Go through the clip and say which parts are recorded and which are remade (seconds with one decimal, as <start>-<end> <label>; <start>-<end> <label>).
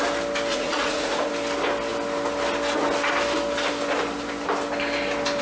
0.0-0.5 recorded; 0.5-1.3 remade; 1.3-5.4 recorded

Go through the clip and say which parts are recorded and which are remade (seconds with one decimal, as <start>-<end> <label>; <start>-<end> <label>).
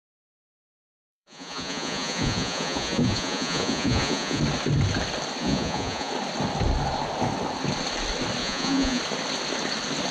0.0-4.4 remade; 4.4-5.4 recorded; 5.4-6.1 remade; 6.1-8.4 recorded; 8.4-9.0 remade; 9.0-10.1 recorded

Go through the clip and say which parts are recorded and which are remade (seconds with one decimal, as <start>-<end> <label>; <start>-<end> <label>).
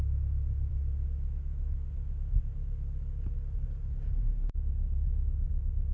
0.0-5.9 recorded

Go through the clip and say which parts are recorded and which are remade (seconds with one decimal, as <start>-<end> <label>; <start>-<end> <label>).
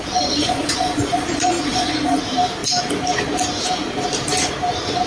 0.0-0.4 recorded; 0.4-2.2 remade; 2.2-5.1 recorded